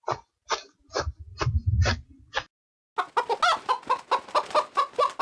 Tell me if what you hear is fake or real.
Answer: real